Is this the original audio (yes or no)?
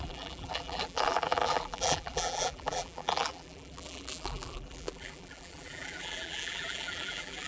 no